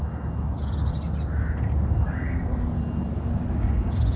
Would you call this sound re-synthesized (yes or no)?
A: no